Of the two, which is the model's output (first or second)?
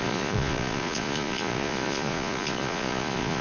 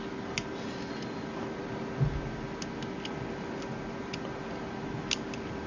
first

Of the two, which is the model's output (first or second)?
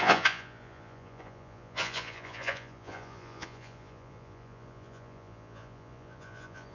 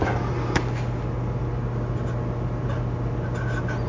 first